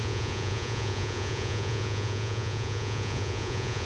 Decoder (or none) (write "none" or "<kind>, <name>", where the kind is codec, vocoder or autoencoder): vocoder, Vocos